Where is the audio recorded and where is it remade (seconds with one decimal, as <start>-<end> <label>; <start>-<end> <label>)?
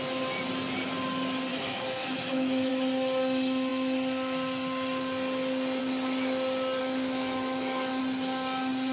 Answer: 0.0-1.5 recorded; 1.5-2.7 remade; 2.7-6.8 recorded; 6.8-8.0 remade; 8.0-8.9 recorded